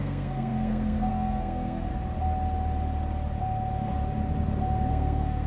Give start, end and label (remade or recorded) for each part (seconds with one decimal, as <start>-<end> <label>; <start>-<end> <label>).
0.0-1.9 remade; 1.9-4.9 recorded; 4.9-5.5 remade